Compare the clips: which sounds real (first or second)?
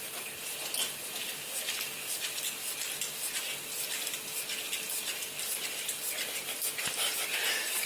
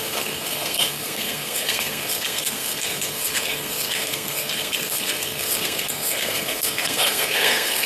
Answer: first